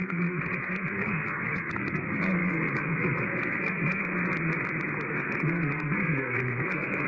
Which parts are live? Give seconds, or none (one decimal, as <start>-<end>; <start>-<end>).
4.0-5.1